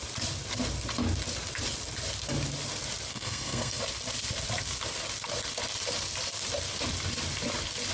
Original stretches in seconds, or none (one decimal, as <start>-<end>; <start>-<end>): 0.0-3.1; 3.8-7.9